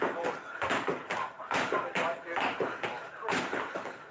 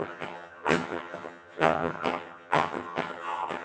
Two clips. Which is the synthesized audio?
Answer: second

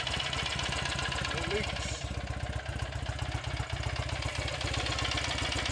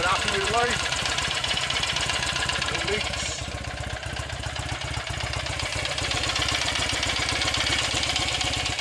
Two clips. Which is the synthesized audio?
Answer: second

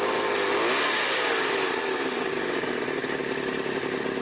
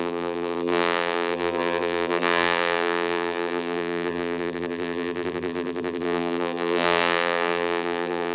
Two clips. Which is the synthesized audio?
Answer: second